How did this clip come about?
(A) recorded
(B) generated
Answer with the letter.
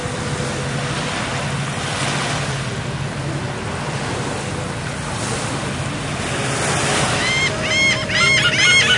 A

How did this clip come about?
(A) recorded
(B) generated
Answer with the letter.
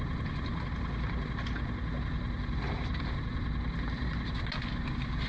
A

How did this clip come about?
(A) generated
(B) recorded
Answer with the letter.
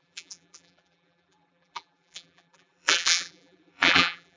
A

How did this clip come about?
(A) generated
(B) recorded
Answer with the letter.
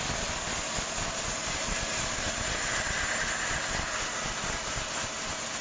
B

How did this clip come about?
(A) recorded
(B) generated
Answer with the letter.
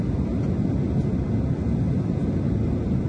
A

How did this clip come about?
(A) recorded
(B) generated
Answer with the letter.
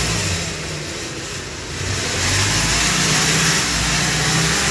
A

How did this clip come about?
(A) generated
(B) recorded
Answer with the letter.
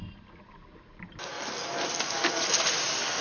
B